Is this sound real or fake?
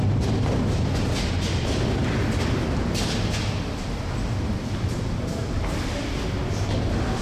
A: real